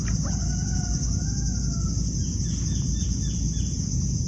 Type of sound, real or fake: real